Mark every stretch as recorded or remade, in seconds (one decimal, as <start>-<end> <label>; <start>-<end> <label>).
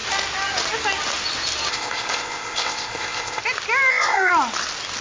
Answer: 0.0-1.7 recorded; 1.7-3.4 remade; 3.4-3.9 recorded; 3.9-4.3 remade; 4.3-5.0 recorded